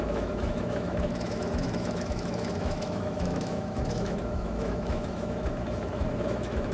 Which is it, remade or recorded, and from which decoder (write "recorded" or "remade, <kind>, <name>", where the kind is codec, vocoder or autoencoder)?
remade, autoencoder, DAC-VAE